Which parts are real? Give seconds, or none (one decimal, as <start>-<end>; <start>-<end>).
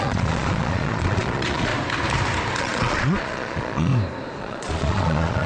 1.7-2.6; 3.9-4.4